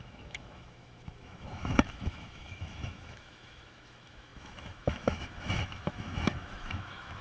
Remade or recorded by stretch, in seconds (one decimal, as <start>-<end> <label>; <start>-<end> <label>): 0.0-7.2 remade